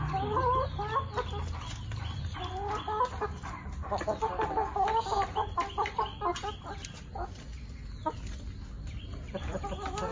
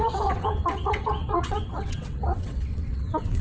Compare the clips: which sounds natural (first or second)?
first